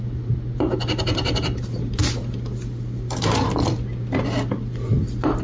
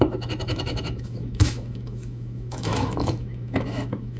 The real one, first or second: first